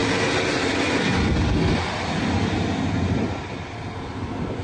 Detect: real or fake real